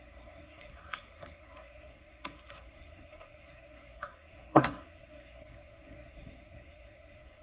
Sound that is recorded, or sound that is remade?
remade